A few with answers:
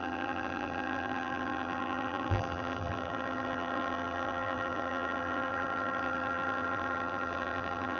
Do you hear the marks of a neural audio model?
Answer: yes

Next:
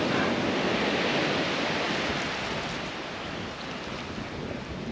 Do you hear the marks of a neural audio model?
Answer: no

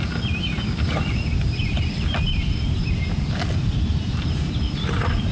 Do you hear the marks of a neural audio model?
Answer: no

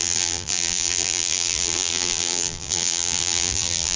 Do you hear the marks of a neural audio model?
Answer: yes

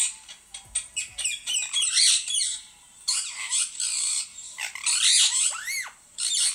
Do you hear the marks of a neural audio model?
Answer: yes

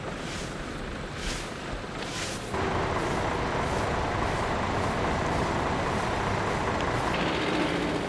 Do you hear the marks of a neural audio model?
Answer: no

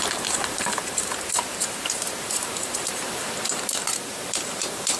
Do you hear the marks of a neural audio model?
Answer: yes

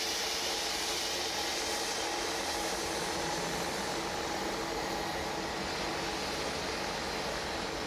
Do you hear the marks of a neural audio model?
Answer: no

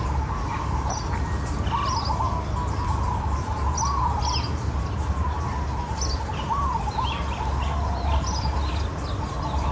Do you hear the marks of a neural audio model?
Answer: no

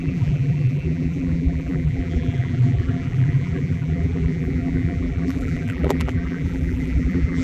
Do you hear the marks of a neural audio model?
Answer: yes